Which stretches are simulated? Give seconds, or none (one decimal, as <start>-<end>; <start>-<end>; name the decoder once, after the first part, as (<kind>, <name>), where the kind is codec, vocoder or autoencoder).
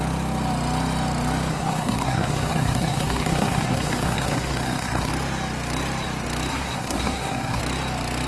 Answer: 1.5-5.1 (codec, SNAC); 6.5-7.6